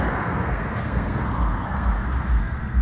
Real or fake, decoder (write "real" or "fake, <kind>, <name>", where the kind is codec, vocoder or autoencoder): fake, codec, SNAC